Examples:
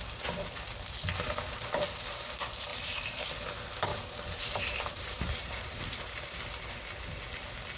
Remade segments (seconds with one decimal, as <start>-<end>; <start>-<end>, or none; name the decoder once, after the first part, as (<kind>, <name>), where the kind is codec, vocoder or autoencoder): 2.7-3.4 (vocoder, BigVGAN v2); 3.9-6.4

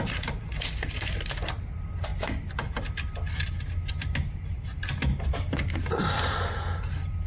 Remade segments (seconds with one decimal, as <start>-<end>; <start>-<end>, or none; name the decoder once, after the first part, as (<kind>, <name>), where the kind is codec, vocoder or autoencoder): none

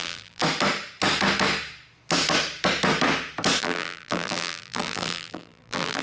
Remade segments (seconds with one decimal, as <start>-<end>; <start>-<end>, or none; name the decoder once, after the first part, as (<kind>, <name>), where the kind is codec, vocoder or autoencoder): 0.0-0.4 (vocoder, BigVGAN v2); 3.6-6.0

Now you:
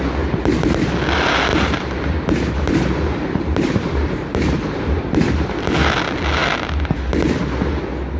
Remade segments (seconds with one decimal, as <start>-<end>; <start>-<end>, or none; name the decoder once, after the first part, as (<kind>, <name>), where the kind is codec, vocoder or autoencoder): 1.5-5.3 (vocoder, BigVGAN v2)